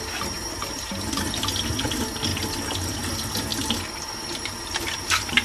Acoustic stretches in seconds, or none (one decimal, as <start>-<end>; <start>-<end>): 2.3-3.0